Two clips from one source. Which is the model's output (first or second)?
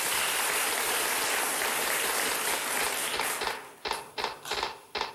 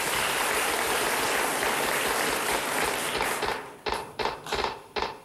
second